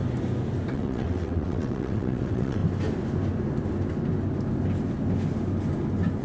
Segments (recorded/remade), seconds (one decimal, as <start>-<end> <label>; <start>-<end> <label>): 0.0-0.7 recorded; 0.7-2.6 remade; 2.6-6.2 recorded